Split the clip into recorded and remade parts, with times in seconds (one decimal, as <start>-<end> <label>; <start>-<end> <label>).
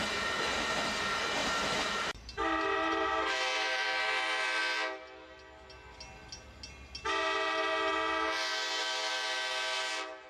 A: 0.0-1.4 recorded; 1.4-4.6 remade; 4.6-10.3 recorded